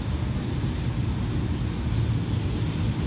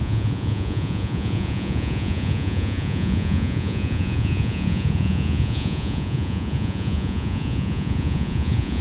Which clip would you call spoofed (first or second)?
second